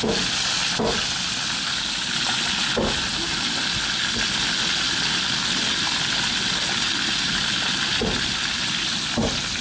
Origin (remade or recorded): recorded